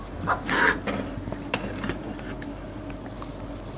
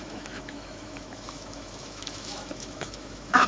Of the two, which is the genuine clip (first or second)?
first